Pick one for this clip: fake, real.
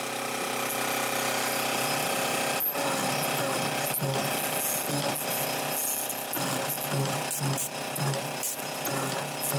real